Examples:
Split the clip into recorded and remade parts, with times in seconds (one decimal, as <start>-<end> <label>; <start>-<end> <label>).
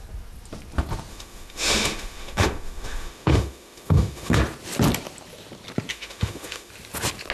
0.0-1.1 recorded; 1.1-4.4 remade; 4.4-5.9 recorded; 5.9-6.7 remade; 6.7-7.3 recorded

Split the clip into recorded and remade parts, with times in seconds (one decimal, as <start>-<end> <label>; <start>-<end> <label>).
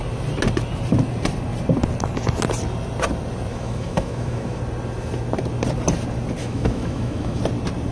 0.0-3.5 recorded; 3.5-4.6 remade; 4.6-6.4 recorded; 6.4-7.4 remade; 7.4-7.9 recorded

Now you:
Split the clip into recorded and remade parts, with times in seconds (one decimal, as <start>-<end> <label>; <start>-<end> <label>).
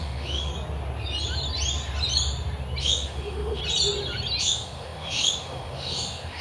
0.0-0.5 remade; 0.5-2.8 recorded; 2.8-3.6 remade; 3.6-4.4 recorded; 4.4-6.4 remade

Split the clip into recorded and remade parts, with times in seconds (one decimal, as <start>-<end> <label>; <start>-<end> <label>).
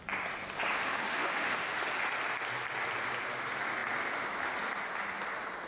0.0-0.8 recorded; 0.8-1.8 remade; 1.8-5.7 recorded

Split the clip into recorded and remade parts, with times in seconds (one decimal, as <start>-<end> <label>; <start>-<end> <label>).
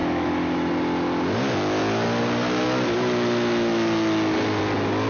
0.0-0.7 remade; 0.7-5.1 recorded